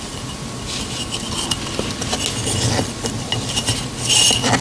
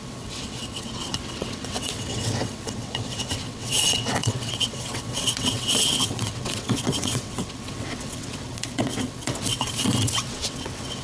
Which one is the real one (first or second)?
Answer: first